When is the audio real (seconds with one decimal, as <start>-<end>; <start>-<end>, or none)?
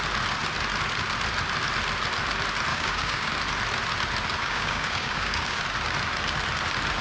0.0-2.7; 3.3-4.4; 5.6-7.0